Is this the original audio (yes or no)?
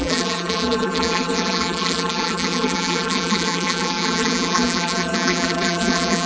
no